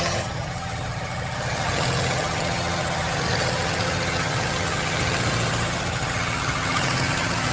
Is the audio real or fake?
fake